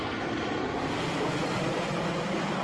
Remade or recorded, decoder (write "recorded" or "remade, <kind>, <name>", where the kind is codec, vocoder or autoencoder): remade, vocoder, BigVGAN v2